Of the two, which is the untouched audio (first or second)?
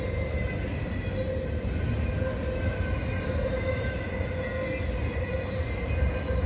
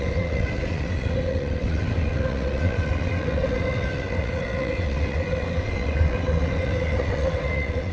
first